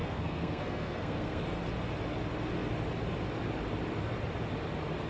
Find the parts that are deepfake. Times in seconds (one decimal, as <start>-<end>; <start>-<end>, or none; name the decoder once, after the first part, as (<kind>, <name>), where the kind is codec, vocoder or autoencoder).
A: 0.0-1.4 (codec, SNAC)

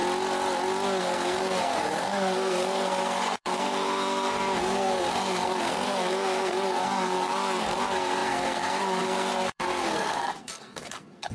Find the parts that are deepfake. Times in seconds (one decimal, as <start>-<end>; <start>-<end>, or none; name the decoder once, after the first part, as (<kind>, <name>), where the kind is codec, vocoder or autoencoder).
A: 1.0-11.3 (codec, SNAC)

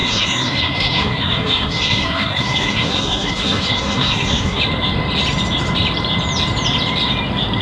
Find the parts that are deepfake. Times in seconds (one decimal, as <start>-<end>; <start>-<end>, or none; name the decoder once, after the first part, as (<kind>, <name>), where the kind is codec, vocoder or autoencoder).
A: 0.0-4.6 (codec, SNAC)